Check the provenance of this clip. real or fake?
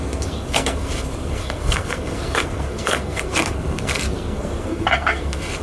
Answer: fake